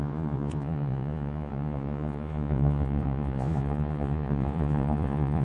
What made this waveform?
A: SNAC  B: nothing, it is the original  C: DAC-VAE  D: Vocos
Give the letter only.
D